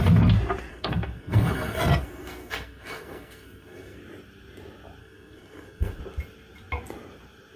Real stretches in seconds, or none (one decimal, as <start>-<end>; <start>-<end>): 0.0-0.7; 4.0-5.0; 6.0-7.6

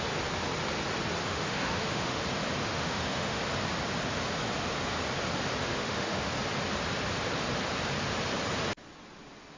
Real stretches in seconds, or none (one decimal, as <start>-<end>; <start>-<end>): 0.0-1.3; 2.2-2.6; 3.4-5.6; 6.3-9.6

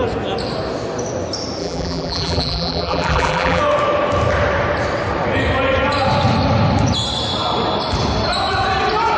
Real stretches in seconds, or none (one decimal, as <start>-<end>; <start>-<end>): 0.0-1.6; 3.6-9.2

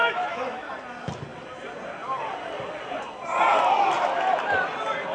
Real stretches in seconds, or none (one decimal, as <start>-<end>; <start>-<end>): 0.7-5.1

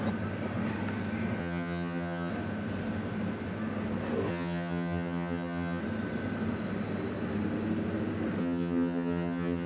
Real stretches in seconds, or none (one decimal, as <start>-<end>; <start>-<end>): 0.0-1.4; 2.3-4.3; 5.8-8.4

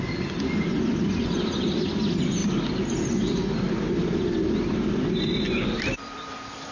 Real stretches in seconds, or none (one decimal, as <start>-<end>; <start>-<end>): 2.4-3.0

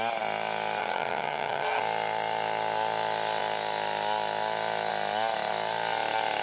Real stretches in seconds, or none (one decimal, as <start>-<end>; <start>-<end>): 0.0-0.8; 1.8-6.4

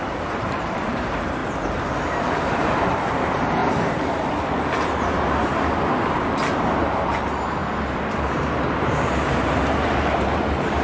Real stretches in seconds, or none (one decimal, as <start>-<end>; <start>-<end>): 1.4-2.3; 5.4-6.8; 7.6-8.2